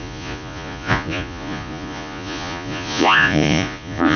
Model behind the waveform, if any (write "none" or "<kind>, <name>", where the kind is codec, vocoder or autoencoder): vocoder, Vocos